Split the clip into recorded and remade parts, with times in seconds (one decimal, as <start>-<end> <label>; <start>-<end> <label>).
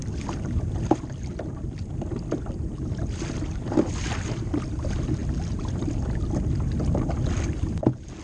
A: 0.0-8.2 recorded